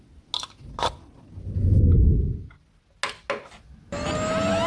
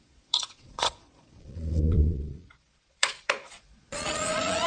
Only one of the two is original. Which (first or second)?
first